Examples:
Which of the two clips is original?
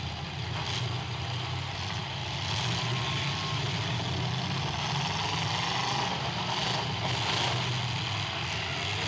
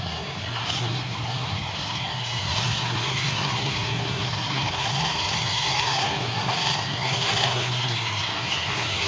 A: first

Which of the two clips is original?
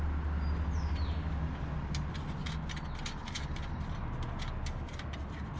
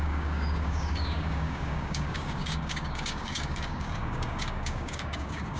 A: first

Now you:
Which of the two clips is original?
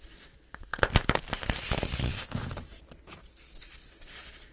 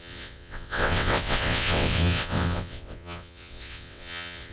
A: first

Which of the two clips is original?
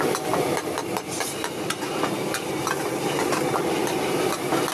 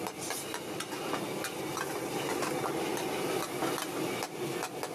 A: second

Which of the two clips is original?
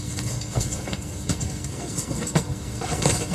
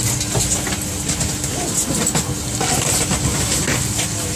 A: second